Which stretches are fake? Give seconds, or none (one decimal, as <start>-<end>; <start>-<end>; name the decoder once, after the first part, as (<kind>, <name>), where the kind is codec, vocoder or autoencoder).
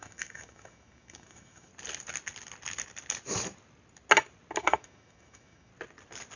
0.0-1.7 (autoencoder, DAC-VAE); 4.6-5.7